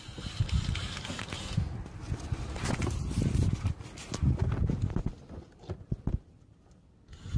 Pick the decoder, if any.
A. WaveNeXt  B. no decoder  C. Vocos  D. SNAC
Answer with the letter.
B